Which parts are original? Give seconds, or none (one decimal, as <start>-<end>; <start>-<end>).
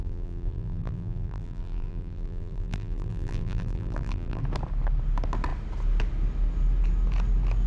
4.4-7.7